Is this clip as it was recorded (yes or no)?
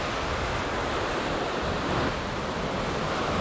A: yes